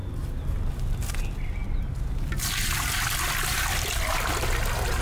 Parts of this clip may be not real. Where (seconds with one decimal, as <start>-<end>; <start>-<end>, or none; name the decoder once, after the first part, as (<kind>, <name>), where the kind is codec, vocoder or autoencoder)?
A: none